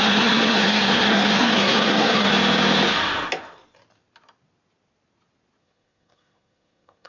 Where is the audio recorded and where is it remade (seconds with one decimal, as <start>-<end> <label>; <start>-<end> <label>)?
0.0-2.3 remade; 2.3-5.6 recorded; 5.6-7.1 remade